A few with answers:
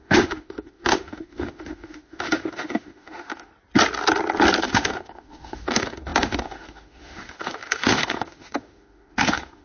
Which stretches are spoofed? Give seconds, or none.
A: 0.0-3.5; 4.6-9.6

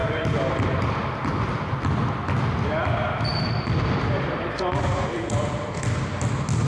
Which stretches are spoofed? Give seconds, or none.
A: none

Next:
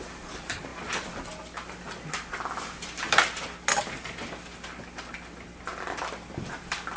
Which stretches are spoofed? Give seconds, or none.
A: none

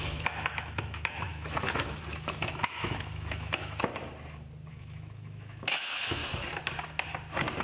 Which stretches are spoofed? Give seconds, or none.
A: 0.0-3.9; 4.7-6.2

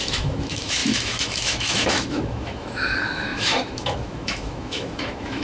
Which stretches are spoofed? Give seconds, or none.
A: 0.0-5.4

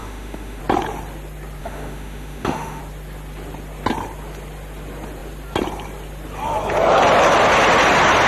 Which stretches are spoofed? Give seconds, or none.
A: 0.0-0.6; 1.6-2.8